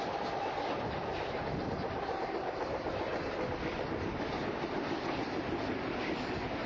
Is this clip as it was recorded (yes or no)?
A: yes